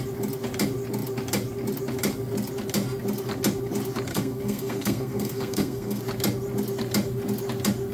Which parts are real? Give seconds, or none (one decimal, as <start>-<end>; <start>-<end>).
0.0-4.1; 6.0-7.9